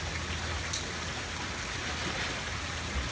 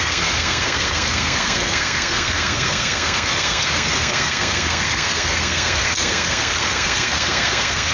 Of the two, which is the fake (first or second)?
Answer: second